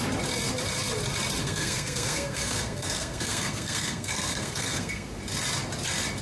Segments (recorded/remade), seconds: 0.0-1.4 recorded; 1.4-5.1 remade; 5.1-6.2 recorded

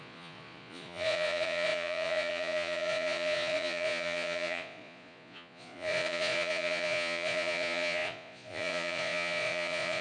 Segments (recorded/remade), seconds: 0.0-10.0 remade

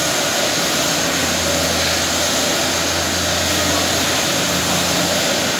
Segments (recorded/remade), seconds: 0.0-5.6 recorded

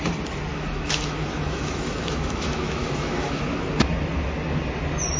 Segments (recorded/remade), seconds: 0.0-0.5 recorded; 0.5-3.6 remade; 3.6-5.2 recorded

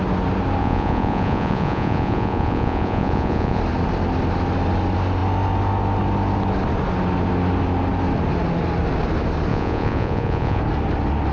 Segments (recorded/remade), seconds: 0.0-0.6 recorded; 0.6-3.6 remade; 3.6-9.5 recorded; 9.5-10.6 remade; 10.6-11.3 recorded